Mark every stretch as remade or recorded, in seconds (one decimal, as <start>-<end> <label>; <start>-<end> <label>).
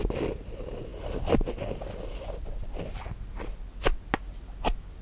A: 0.0-5.0 recorded